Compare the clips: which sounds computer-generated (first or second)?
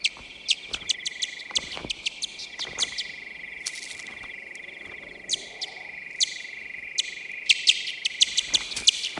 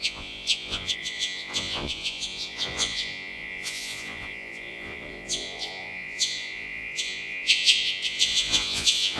second